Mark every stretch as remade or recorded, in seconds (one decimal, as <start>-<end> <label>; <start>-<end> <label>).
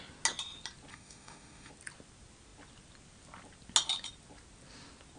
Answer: 0.0-0.9 recorded; 0.9-1.7 remade; 1.7-5.2 recorded